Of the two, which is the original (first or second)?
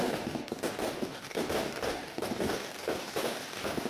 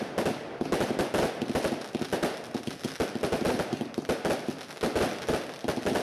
second